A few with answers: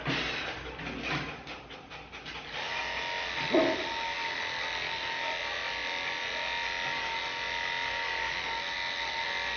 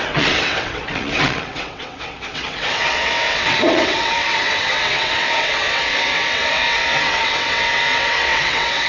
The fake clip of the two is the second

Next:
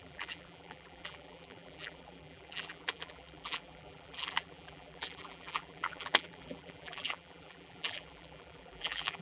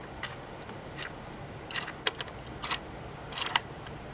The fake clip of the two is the first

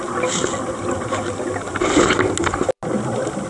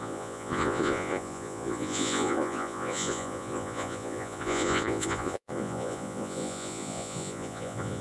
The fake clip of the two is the second